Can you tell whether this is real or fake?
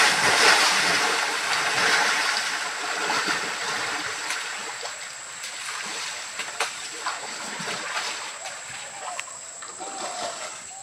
fake